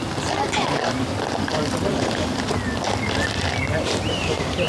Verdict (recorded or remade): recorded